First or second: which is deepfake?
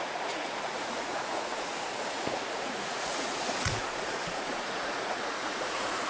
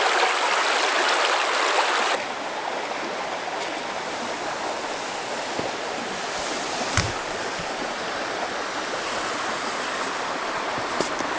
first